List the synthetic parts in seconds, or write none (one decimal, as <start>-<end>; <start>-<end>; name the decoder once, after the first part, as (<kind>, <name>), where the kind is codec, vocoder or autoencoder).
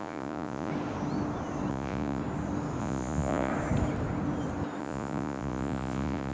0.0-0.7 (vocoder, Vocos); 1.7-2.2; 2.8-3.5; 4.8-6.3